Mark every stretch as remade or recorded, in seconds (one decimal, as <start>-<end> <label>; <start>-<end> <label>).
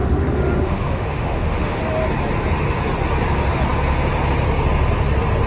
0.0-1.8 remade; 1.8-5.5 recorded